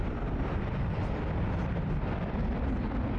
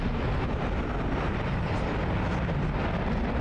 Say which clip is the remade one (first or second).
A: first